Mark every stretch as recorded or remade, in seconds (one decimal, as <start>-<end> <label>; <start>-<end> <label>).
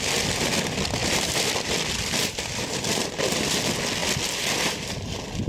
0.0-1.0 recorded; 1.0-3.5 remade; 3.5-5.5 recorded